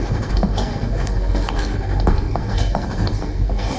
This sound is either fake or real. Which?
fake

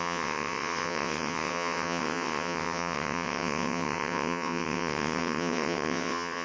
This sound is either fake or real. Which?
fake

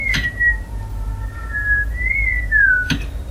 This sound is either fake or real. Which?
real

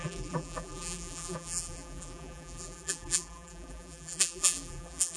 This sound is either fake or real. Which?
fake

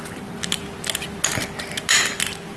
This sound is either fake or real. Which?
real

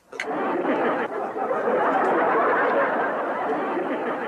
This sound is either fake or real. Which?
real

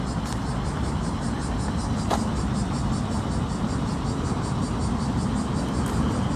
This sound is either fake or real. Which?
real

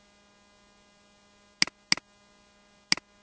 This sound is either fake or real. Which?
real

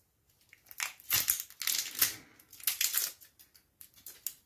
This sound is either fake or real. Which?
real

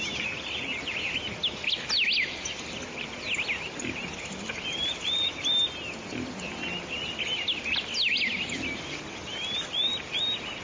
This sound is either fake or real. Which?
real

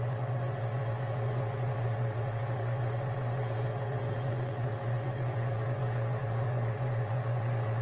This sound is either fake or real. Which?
fake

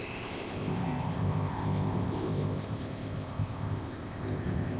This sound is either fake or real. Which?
fake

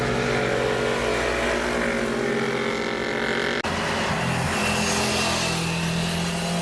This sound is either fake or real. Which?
real